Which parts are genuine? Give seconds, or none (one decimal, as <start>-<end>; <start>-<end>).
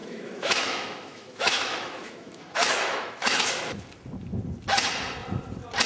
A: 3.5-5.9